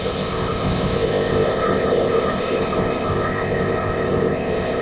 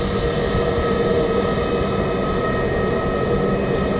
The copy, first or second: first